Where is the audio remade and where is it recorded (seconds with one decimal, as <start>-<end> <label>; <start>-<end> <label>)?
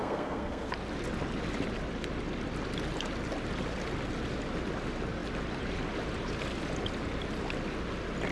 0.0-0.7 remade; 0.7-8.3 recorded